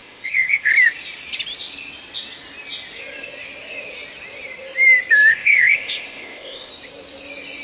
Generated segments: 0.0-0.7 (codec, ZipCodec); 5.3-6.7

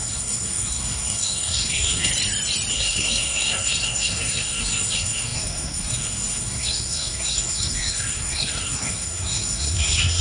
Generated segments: 0.0-2.1 (codec, SNAC); 2.7-10.2

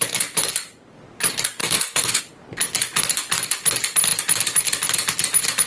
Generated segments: 1.6-2.2 (codec, DAC)